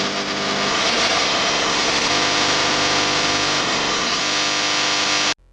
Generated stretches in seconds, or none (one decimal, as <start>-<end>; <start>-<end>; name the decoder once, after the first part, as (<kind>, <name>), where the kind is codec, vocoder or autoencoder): 0.7-2.1 (codec, SNAC); 3.6-4.2

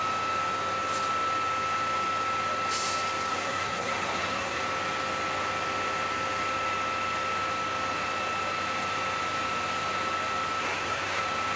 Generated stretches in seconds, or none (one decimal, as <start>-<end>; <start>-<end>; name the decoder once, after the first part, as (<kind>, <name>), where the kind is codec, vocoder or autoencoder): 3.3-4.6 (codec, SNAC); 10.6-11.2

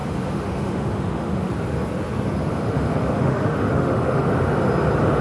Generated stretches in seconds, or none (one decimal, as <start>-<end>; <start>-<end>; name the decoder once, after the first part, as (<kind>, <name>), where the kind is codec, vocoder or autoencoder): 0.0-1.5 (autoencoder, DAC-VAE); 2.5-4.3

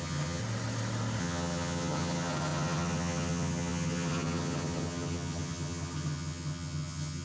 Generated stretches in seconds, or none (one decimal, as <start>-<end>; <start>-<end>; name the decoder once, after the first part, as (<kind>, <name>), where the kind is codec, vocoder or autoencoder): 0.0-0.4 (vocoder, HiFi-GAN); 1.2-7.2

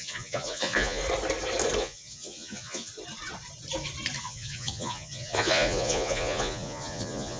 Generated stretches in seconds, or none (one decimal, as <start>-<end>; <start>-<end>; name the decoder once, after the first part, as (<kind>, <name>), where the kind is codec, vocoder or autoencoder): 0.0-1.0 (vocoder, Vocos); 1.8-2.9; 4.2-7.4

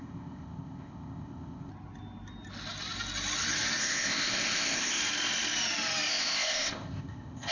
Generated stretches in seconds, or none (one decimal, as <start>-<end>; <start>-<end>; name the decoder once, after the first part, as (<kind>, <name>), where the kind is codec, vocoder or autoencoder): 0.0-1.7 (codec, ZipCodec); 3.8-5.0; 6.1-7.5